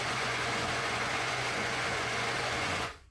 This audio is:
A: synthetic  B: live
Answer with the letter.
A